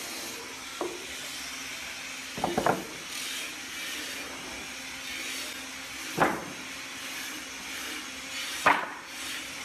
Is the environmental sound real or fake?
real